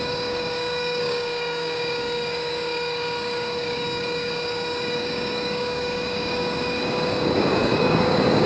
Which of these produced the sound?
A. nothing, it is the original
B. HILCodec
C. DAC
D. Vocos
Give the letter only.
C